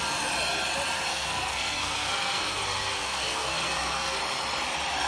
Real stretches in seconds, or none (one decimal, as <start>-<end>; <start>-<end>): 0.0-1.1; 4.2-5.1